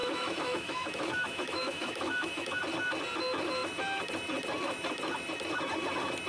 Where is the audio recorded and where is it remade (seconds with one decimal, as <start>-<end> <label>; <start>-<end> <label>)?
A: 0.0-2.6 remade; 2.6-6.3 recorded